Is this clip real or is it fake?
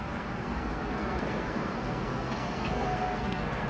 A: fake